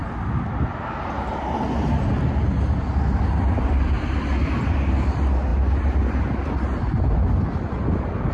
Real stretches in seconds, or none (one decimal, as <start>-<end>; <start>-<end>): 0.0-8.3

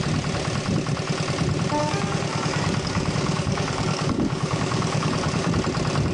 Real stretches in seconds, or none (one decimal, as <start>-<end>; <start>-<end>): 0.0-1.8; 5.5-6.1

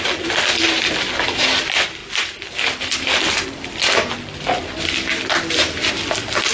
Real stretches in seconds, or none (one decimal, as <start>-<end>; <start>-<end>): 0.0-6.5

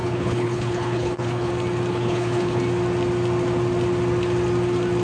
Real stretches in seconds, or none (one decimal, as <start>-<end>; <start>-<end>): 1.5-1.9; 2.6-5.0

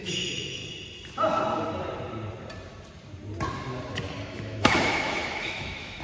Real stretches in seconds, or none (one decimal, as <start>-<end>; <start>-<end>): 0.6-4.2